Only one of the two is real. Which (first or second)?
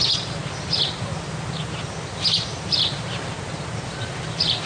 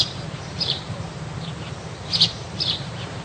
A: first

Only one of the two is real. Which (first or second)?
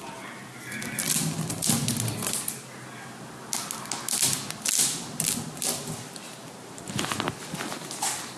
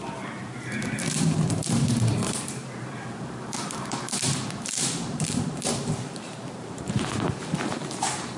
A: first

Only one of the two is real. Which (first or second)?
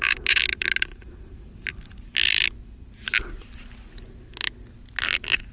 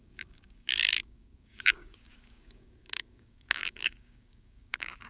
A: first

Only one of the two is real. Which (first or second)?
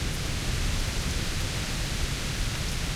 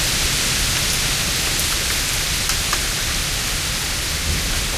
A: second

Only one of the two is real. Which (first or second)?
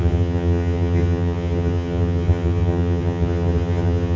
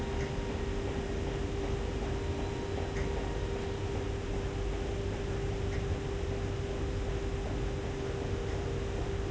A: second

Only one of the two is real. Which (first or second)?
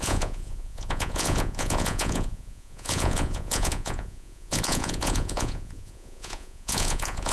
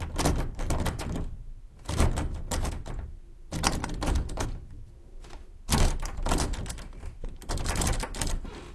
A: second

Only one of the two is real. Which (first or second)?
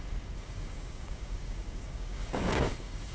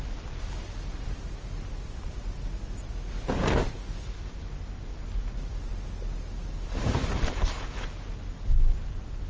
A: second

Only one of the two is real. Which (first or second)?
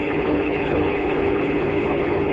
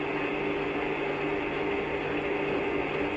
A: second